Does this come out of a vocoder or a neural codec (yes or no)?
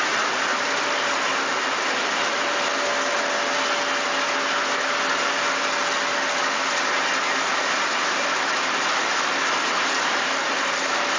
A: no